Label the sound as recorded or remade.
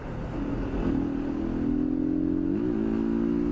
recorded